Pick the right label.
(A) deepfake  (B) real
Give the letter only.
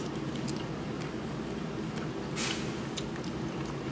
B